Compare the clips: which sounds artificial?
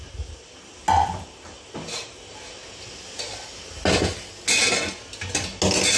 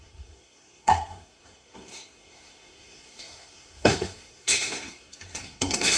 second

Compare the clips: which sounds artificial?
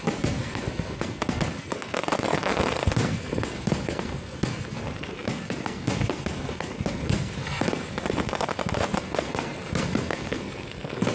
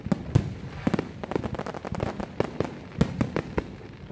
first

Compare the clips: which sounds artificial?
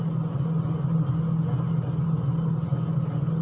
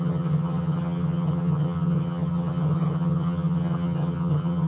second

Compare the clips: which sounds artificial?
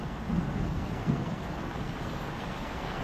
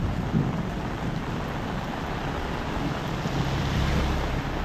first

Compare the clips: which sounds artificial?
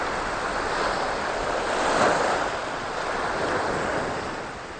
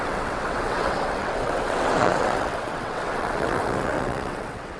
second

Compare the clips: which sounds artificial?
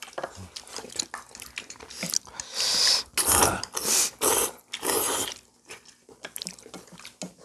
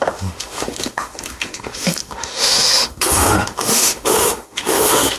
second